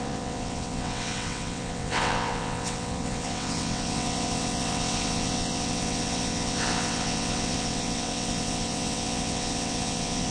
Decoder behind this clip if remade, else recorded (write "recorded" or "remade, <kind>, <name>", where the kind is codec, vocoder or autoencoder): remade, vocoder, WaveNeXt